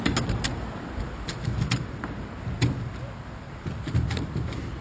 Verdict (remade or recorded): recorded